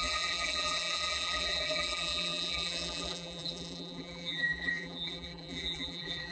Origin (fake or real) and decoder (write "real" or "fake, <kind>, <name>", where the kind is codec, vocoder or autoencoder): fake, vocoder, BigVGAN v2